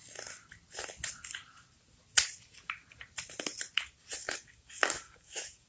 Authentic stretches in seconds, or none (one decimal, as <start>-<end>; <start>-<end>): 0.0-4.2

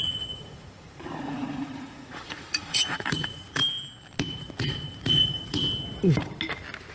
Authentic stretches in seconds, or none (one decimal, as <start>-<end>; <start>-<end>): 3.6-4.3; 5.6-6.9

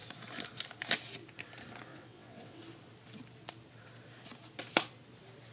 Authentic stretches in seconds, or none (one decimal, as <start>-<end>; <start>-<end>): 0.0-1.9; 2.6-5.5

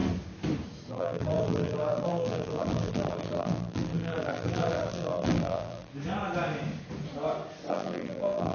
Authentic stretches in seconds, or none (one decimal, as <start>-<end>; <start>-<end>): 0.0-0.9; 5.9-7.7

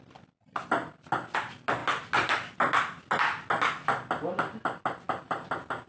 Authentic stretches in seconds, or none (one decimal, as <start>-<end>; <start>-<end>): 0.0-5.9